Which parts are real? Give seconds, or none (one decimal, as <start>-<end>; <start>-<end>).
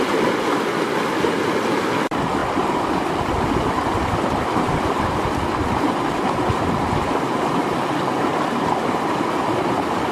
0.0-2.4; 6.7-10.1